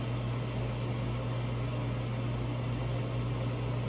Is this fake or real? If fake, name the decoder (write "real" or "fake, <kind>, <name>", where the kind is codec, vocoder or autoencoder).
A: real